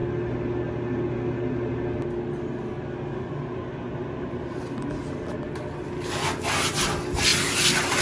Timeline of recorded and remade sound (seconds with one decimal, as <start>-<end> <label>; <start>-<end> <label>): 0.0-8.0 recorded